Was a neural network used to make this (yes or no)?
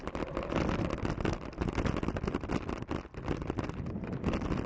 no